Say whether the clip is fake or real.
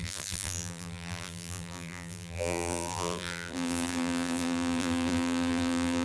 fake